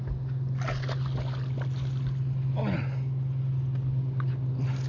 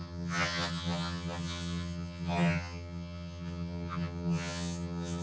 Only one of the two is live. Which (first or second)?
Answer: first